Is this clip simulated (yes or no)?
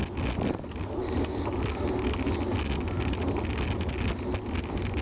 no